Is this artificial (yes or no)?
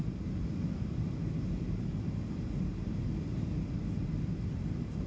no